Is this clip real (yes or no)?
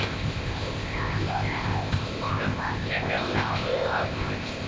no